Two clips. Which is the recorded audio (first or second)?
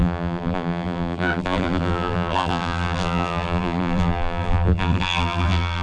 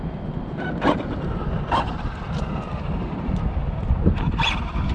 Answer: second